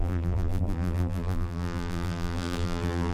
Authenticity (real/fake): fake